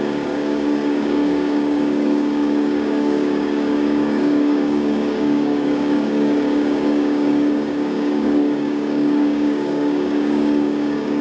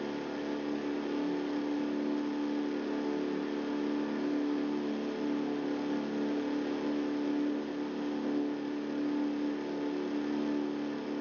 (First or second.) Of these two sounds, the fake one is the first